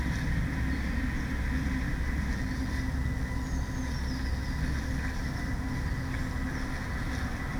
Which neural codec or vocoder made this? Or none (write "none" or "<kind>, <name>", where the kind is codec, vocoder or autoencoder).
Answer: none